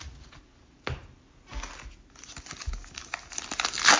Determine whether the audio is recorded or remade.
recorded